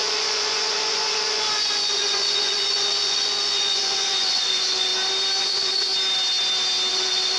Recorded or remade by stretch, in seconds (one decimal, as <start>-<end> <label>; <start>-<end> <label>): 0.0-4.9 remade; 4.9-5.4 recorded; 5.4-5.9 remade; 5.9-6.9 recorded; 6.9-7.4 remade